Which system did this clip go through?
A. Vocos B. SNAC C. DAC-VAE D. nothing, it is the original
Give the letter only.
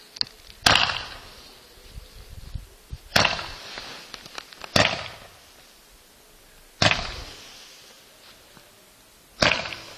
D